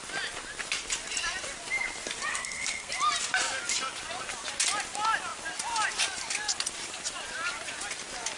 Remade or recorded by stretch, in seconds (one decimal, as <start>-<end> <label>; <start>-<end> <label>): 0.0-2.3 recorded; 2.3-2.9 remade; 2.9-8.4 recorded